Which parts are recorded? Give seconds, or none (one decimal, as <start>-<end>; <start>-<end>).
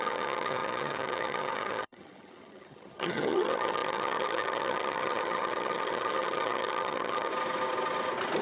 7.3-8.4